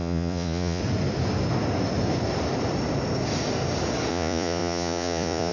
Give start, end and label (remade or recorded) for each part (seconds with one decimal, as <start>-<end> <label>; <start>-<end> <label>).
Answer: 0.0-0.8 remade; 0.8-4.1 recorded; 4.1-5.5 remade